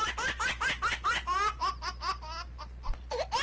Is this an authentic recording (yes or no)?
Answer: yes